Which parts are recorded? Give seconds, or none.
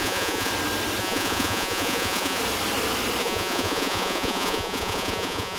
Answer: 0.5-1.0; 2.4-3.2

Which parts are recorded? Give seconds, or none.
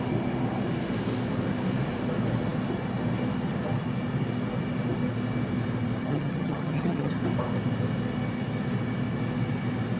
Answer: 0.0-6.0; 7.2-10.0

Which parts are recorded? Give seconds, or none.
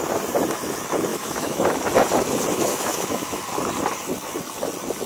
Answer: 0.0-1.1; 1.9-2.5; 3.4-5.1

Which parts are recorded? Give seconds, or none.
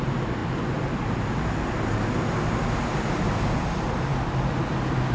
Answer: 0.0-5.1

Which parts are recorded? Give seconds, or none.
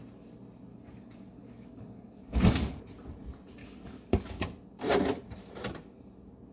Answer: 0.0-0.7; 2.8-3.6; 4.2-6.5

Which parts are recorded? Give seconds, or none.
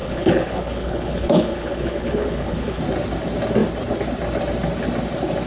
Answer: 2.8-5.5